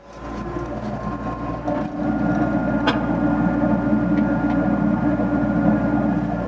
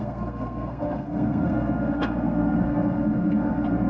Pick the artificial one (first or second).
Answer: second